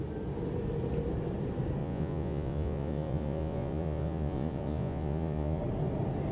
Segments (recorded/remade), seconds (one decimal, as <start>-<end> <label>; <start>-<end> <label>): 0.0-1.8 recorded; 1.8-5.6 remade; 5.6-6.3 recorded